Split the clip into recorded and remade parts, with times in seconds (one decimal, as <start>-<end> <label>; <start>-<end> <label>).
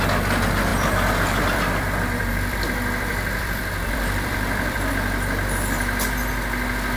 0.0-0.7 recorded; 0.7-4.9 remade; 4.9-7.0 recorded